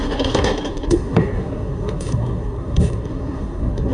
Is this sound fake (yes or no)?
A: yes